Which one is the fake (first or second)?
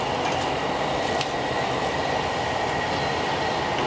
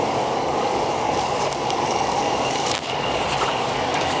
second